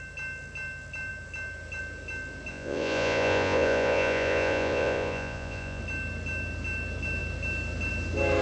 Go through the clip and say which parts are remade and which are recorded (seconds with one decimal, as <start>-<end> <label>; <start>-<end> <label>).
0.0-2.5 recorded; 2.5-5.8 remade; 5.8-8.4 recorded